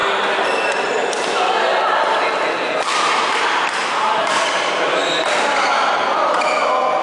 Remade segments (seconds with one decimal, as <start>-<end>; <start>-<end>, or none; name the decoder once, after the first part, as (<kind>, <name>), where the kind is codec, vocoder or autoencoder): none